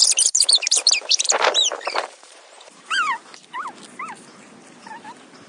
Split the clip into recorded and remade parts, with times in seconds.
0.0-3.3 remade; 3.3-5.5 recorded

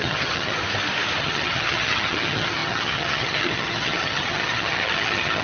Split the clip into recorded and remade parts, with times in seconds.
0.0-0.6 remade; 0.6-1.2 recorded; 1.2-5.4 remade

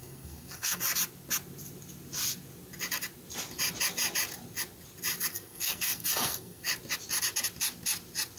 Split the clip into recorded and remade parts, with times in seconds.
0.0-0.8 remade; 0.8-5.3 recorded; 5.3-6.7 remade; 6.7-8.4 recorded

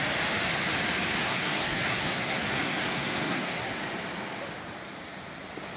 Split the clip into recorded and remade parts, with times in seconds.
0.0-1.2 recorded; 1.2-3.8 remade; 3.8-5.8 recorded

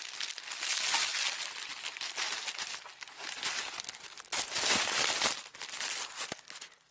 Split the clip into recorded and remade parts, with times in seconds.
0.0-6.9 recorded

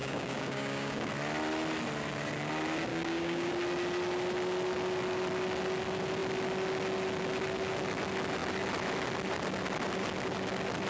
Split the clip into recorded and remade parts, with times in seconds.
0.0-1.1 remade; 1.1-2.9 recorded; 2.9-3.5 remade; 3.5-10.9 recorded

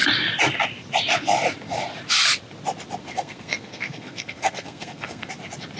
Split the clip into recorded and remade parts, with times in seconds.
0.0-3.0 recorded; 3.0-5.3 remade; 5.3-5.8 recorded